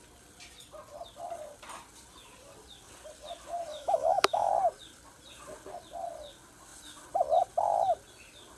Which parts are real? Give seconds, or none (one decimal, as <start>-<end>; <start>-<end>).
0.0-3.7; 4.5-8.6